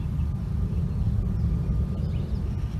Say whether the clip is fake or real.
real